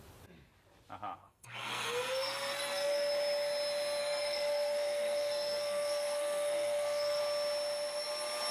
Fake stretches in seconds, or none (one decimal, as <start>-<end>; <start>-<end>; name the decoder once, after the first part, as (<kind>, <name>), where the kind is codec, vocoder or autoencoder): 1.2-3.1 (codec, SNAC); 4.0-7.2